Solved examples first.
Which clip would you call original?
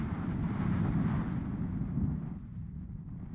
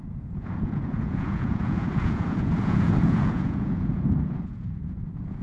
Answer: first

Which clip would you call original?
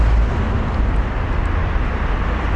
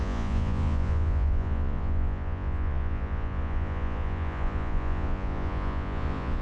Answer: first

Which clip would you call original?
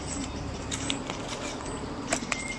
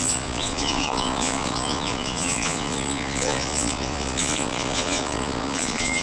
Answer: first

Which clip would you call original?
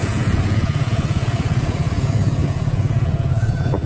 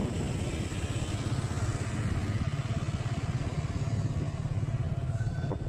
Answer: second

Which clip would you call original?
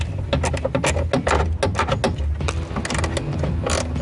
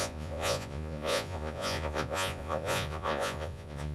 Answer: first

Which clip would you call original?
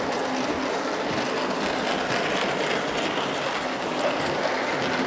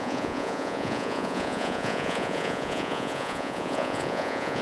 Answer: first